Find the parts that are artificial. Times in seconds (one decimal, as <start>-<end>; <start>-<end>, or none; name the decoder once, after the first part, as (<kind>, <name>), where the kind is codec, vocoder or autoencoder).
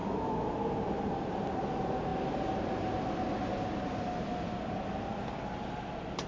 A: 0.0-0.5 (autoencoder, DAC-VAE)